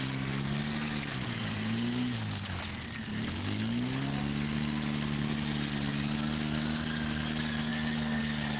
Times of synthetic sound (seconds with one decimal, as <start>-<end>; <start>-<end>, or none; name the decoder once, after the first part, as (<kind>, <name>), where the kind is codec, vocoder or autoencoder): none